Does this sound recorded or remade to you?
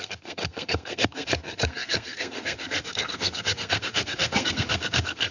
remade